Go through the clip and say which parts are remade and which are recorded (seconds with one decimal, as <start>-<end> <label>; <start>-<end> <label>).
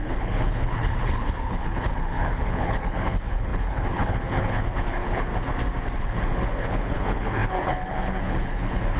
0.0-5.3 remade; 5.3-6.0 recorded; 6.0-9.0 remade